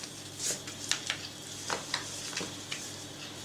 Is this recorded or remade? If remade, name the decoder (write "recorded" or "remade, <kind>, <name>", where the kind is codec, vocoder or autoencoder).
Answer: recorded